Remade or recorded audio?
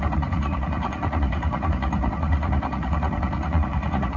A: remade